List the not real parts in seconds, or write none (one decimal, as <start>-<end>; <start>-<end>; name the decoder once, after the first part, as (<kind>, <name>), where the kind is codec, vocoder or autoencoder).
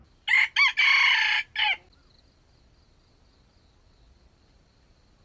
none